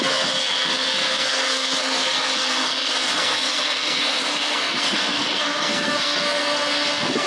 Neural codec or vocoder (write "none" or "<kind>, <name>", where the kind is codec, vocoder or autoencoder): codec, SNAC